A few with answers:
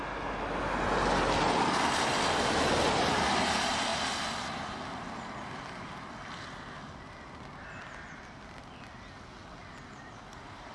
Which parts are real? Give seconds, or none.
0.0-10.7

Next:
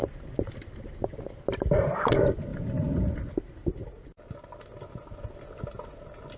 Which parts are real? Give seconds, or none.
0.6-2.5; 3.1-6.4